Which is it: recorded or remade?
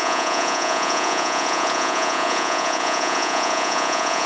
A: remade